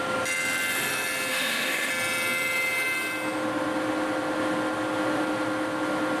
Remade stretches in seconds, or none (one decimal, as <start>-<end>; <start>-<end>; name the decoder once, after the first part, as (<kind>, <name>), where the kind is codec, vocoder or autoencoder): 1.3-1.9 (autoencoder, DAC-VAE)